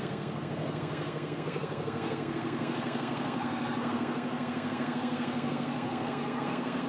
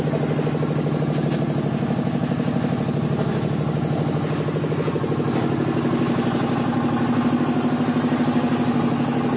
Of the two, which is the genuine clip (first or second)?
second